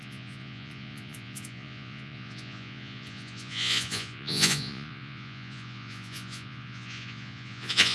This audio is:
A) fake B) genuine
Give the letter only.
A